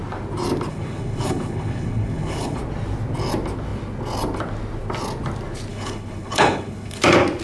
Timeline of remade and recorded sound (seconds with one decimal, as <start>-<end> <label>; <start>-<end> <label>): 0.0-0.7 recorded; 0.7-2.6 remade; 2.6-5.7 recorded; 5.7-7.0 remade; 7.0-7.4 recorded